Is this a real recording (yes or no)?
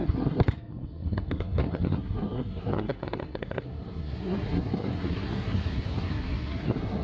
no